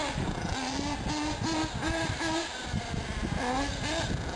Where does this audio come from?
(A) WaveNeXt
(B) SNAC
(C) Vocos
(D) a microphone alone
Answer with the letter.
D